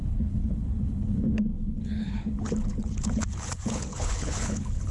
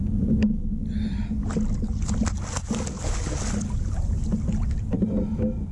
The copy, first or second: first